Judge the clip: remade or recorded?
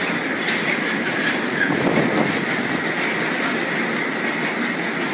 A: recorded